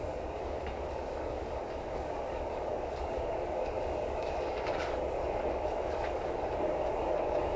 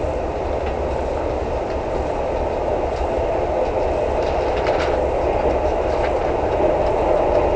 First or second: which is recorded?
second